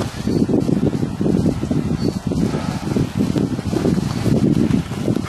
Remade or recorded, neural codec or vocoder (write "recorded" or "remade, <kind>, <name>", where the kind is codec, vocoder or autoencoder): recorded